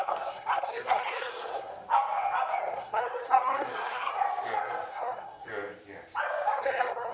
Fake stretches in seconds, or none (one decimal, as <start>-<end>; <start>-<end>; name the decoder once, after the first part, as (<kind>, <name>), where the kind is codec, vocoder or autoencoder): 0.0-1.7 (codec, SNAC); 2.6-4.1; 4.9-5.5; 6.6-7.1